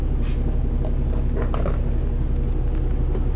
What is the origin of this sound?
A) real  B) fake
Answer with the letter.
A